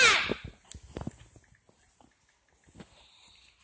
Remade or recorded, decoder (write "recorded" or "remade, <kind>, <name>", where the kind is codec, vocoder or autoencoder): recorded